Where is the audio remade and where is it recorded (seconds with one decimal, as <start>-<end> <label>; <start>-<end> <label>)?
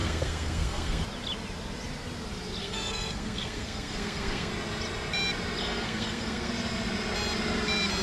0.0-1.0 remade; 1.0-2.6 recorded; 2.6-4.5 remade; 4.5-5.6 recorded; 5.6-6.5 remade; 6.5-8.0 recorded